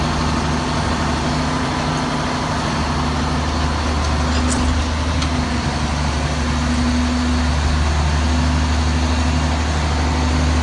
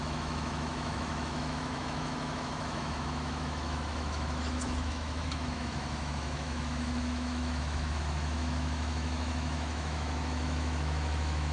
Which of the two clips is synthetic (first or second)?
second